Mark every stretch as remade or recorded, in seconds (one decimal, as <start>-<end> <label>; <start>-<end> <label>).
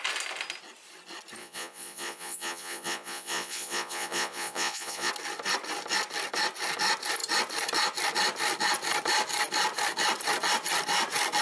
0.0-1.4 recorded; 1.4-5.1 remade; 5.1-11.4 recorded